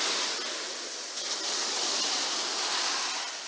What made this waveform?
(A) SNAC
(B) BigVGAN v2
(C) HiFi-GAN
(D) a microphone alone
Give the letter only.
D